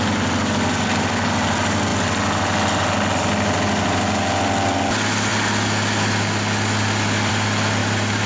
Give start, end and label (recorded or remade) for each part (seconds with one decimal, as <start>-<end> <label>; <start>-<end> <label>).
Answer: 0.0-7.8 recorded; 7.8-8.3 remade